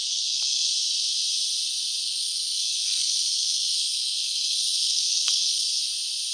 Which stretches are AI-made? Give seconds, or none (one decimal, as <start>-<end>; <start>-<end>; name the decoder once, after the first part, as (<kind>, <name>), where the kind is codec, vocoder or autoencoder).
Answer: 0.0-0.7 (codec, SNAC); 2.0-5.8